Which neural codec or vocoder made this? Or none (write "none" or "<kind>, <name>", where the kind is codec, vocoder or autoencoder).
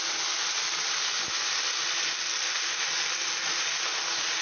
none